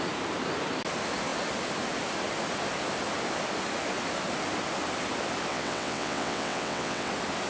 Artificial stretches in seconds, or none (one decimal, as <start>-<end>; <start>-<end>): 5.5-7.1